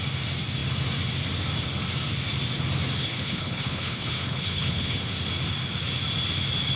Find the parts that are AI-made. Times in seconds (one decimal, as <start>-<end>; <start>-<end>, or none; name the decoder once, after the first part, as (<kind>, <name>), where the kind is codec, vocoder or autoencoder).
3.0-5.0 (codec, HILCodec)